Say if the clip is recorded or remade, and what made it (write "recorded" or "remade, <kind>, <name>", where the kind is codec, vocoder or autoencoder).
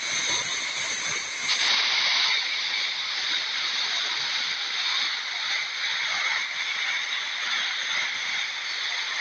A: recorded